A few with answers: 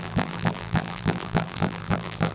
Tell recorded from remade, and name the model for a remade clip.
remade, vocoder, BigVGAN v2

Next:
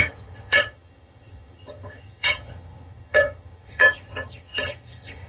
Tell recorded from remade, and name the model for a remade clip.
remade, vocoder, HiFi-GAN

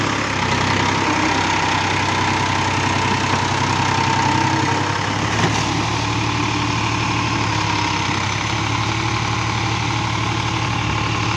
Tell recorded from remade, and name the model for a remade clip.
recorded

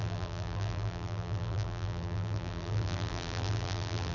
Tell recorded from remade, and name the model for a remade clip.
remade, vocoder, BigVGAN v2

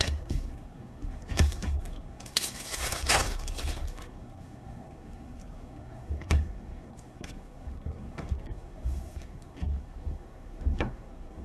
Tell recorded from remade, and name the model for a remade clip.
remade, codec, SNAC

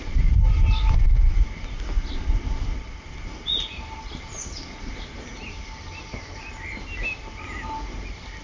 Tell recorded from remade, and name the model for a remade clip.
recorded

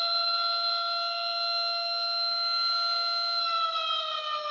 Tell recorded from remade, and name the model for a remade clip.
recorded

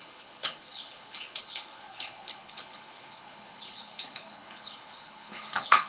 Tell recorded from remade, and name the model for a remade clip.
remade, codec, HILCodec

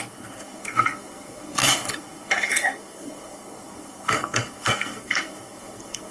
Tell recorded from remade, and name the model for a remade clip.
remade, codec, SNAC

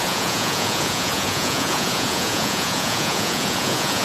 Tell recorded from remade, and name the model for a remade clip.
remade, vocoder, Vocos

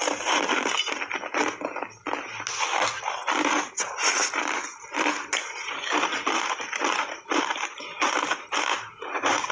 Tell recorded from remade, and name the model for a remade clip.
recorded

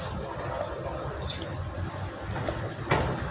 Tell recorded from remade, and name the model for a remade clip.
recorded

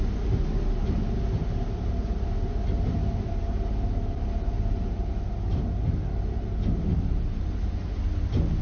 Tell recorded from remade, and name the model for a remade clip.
recorded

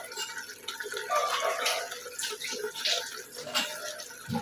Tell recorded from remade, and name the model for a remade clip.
recorded